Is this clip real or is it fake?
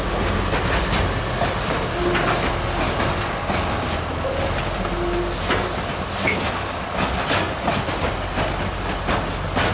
real